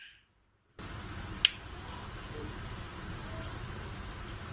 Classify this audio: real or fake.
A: real